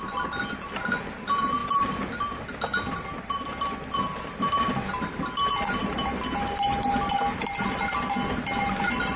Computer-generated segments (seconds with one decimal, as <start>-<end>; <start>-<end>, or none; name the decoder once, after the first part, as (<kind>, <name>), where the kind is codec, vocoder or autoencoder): none